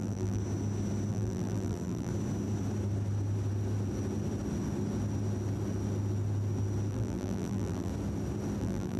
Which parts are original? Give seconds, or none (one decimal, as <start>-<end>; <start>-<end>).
0.4-1.1; 2.1-6.9; 7.9-8.6